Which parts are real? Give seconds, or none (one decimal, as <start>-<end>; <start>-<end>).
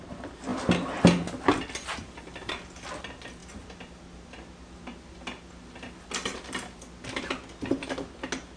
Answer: 0.0-8.6